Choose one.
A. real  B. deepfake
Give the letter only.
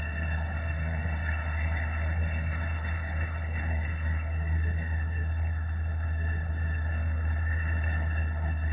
B